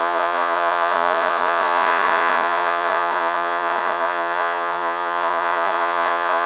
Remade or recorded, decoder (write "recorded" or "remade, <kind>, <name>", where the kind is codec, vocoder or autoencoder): remade, vocoder, Vocos